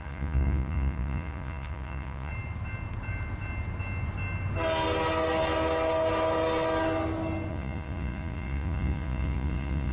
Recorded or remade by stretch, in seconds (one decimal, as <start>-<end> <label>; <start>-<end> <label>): 0.0-2.3 remade; 2.3-7.5 recorded; 7.5-9.9 remade